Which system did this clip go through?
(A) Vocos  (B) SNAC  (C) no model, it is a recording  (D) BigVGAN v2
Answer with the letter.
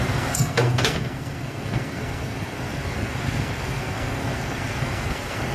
B